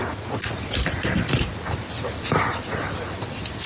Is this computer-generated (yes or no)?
no